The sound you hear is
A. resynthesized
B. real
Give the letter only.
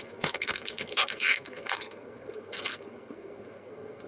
A